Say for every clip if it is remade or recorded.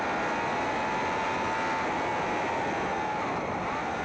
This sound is recorded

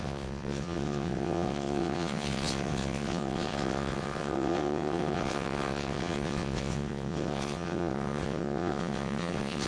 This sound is remade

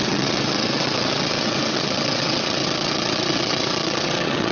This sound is remade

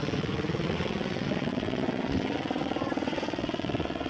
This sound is remade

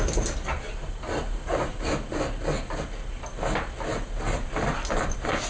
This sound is recorded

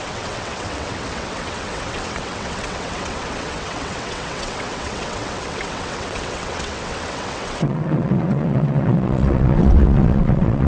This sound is remade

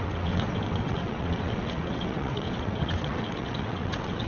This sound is remade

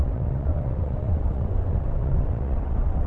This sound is remade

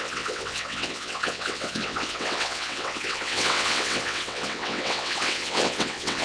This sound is remade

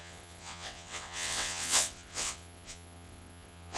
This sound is remade